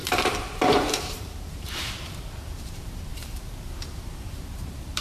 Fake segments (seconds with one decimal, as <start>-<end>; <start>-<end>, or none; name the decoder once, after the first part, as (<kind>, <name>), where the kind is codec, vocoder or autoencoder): 0.0-5.0 (vocoder, BigVGAN v2)